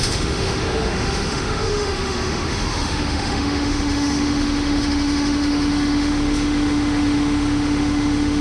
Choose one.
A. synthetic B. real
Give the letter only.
A